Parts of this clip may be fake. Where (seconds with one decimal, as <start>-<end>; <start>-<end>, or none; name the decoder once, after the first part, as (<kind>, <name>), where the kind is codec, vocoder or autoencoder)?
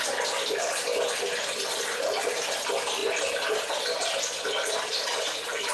none